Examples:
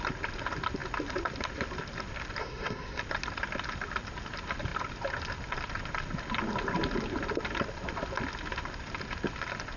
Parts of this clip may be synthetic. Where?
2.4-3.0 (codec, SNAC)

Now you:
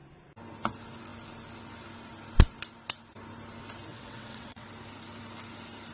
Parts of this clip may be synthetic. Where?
3.9-4.7 (vocoder, WaveNeXt)

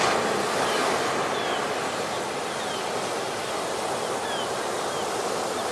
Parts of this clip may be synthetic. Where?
none

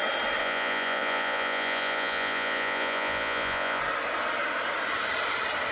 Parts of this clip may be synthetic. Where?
0.4-3.8 (vocoder, Vocos)

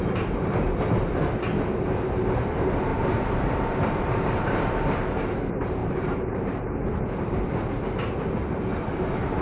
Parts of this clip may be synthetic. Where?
2.9-4.8 (vocoder, BigVGAN v2); 5.8-7.1